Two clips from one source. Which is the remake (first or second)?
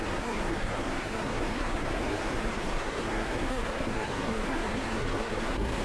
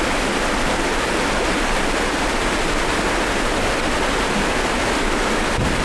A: first